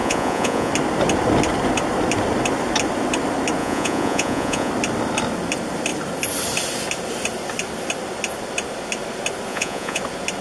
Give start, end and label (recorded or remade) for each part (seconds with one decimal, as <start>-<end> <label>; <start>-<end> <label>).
0.0-0.7 remade; 0.7-3.6 recorded; 3.6-4.7 remade; 4.7-9.5 recorded; 9.5-10.0 remade; 10.0-10.4 recorded